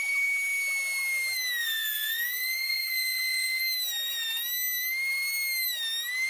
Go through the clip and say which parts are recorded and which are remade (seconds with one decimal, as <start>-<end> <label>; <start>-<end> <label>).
0.0-1.6 recorded; 1.6-3.6 remade; 3.6-6.3 recorded